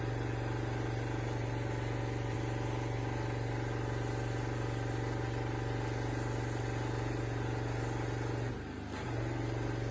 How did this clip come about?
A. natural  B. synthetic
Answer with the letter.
A